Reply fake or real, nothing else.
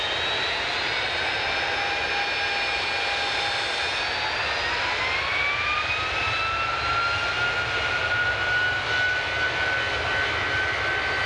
real